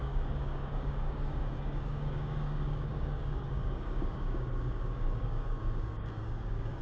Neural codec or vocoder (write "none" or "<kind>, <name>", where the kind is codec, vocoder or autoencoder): codec, DAC